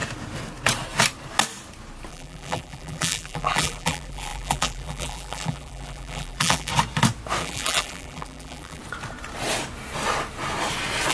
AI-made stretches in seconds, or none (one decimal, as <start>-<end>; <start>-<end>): 2.1-6.7; 7.4-8.8